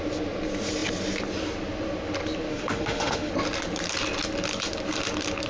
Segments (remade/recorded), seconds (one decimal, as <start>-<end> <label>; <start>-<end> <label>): 0.0-2.5 recorded; 2.5-3.3 remade; 3.3-5.5 recorded